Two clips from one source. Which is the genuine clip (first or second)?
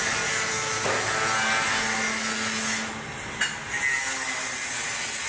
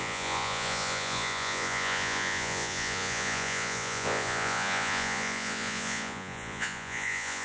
first